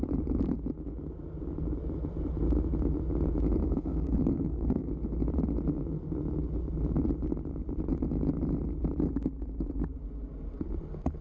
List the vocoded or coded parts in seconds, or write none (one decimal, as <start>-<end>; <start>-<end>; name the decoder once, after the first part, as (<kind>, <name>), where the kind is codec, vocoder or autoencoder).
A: 3.6-4.9 (codec, SNAC)